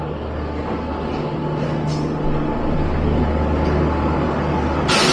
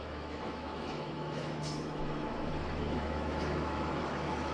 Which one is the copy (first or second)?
second